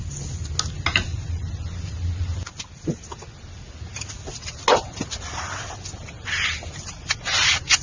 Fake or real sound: real